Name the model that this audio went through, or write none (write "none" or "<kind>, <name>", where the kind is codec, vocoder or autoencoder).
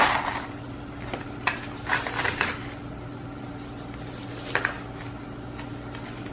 none